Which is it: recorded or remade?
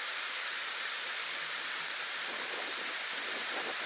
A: recorded